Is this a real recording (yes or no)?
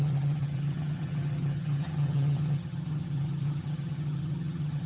no